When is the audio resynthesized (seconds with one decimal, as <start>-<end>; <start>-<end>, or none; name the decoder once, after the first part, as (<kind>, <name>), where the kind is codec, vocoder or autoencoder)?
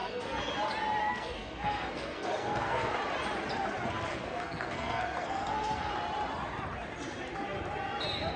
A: 0.0-0.5 (codec, SNAC); 1.0-2.9; 4.1-5.9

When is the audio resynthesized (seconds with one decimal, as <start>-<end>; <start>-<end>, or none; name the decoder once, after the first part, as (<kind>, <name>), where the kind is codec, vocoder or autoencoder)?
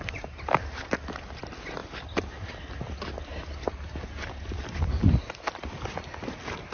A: none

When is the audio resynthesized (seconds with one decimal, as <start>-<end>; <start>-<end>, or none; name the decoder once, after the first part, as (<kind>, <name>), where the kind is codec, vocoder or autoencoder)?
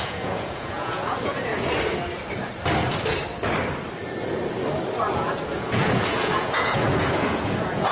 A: 0.0-1.5 (vocoder, Vocos); 5.1-7.9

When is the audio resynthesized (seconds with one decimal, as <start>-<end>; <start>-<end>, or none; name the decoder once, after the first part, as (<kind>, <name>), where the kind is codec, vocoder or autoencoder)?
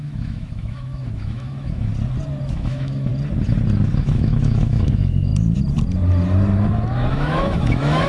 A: 0.0-1.9 (autoencoder, DAC-VAE); 2.5-3.1; 4.0-5.3; 7.1-8.1